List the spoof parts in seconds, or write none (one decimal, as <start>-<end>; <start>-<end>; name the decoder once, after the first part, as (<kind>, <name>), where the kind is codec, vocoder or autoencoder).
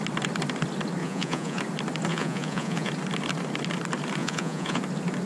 1.0-1.6 (vocoder, Vocos); 2.1-2.9; 4.2-4.8